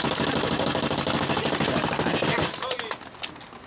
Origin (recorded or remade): recorded